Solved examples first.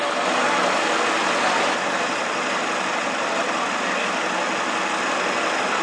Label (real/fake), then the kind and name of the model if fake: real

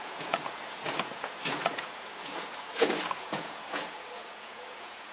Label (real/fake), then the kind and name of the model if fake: fake, vocoder, Vocos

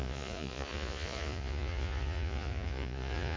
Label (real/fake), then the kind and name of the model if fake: fake, vocoder, Vocos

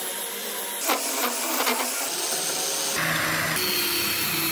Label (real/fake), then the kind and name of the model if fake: real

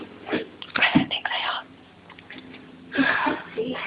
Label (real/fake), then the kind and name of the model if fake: real